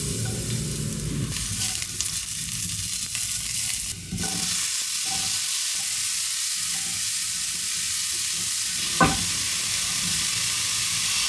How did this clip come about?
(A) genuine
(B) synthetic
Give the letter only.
A